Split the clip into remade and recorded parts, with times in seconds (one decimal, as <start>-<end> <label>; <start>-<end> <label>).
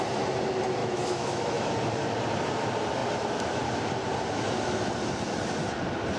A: 0.0-0.8 recorded; 0.8-1.7 remade; 1.7-6.2 recorded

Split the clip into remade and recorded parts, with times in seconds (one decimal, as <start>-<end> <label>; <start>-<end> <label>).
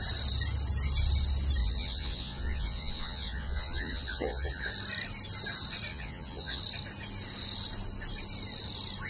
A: 0.0-1.6 recorded; 1.6-4.7 remade; 4.7-5.9 recorded; 5.9-6.6 remade; 6.6-9.1 recorded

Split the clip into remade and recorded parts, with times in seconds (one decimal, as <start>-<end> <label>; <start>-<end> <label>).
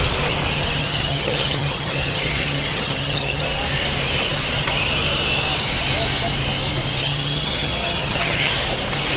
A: 0.0-0.8 recorded; 0.8-3.4 remade; 3.4-7.0 recorded; 7.0-8.5 remade; 8.5-9.2 recorded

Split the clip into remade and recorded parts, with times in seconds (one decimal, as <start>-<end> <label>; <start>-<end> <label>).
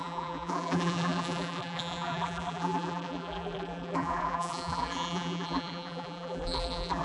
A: 0.0-7.0 remade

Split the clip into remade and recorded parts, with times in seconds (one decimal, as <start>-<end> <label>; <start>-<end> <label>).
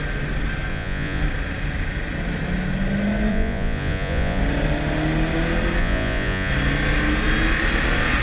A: 0.0-0.7 recorded; 0.7-1.2 remade; 1.2-3.3 recorded; 3.3-4.4 remade; 4.4-5.8 recorded; 5.8-6.5 remade; 6.5-8.2 recorded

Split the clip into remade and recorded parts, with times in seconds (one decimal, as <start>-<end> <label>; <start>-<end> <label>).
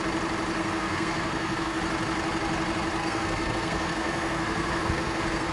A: 0.0-0.6 recorded; 0.6-1.8 remade; 1.8-3.0 recorded; 3.0-5.5 remade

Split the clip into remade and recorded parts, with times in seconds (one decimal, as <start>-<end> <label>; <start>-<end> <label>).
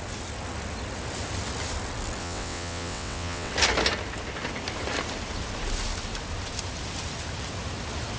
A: 0.0-2.2 recorded; 2.2-3.5 remade; 3.5-8.2 recorded